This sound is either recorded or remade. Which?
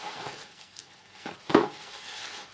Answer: remade